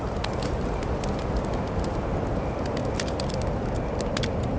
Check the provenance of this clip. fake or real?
real